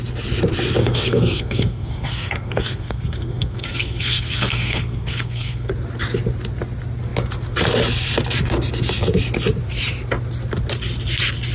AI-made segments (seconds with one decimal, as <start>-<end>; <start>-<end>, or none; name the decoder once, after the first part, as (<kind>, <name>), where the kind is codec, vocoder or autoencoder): 0.8-5.7 (codec, SNAC)